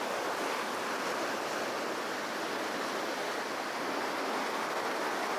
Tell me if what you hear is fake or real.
real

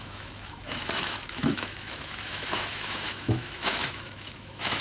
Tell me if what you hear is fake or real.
fake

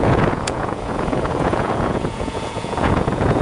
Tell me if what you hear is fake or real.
fake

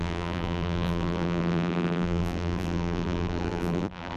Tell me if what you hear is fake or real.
fake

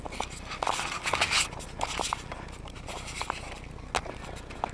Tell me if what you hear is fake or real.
real